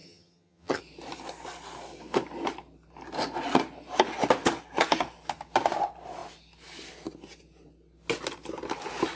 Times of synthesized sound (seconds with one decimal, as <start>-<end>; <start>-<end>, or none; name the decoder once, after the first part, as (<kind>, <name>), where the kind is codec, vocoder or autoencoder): 0.0-0.8 (vocoder, HiFi-GAN)

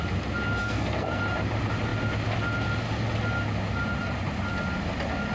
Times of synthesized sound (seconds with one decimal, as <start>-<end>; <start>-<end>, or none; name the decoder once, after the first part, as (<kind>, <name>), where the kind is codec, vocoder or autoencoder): 0.6-1.2 (codec, SNAC)

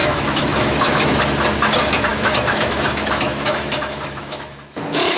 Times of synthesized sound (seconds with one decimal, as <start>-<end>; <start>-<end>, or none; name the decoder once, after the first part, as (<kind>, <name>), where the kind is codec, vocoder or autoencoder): 0.0-1.2 (autoencoder, DAC-VAE); 2.1-5.2